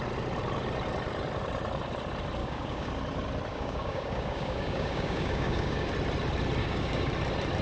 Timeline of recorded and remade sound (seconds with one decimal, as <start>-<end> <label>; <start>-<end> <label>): 0.0-2.4 recorded; 2.4-2.9 remade; 2.9-3.5 recorded; 3.5-5.9 remade; 5.9-6.6 recorded; 6.6-7.1 remade; 7.1-7.6 recorded